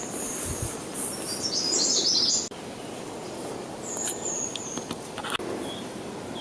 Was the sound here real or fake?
real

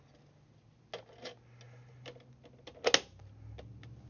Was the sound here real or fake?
real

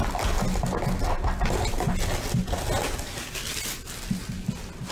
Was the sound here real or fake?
real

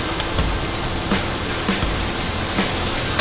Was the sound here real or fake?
real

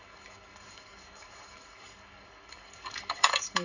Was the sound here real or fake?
fake